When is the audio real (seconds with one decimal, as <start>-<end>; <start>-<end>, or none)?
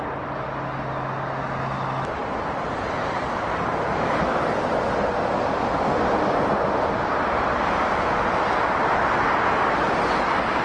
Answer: 0.0-10.6